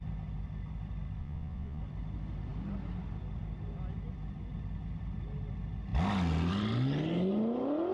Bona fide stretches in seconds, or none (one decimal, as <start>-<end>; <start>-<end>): 0.0-1.2; 1.8-7.9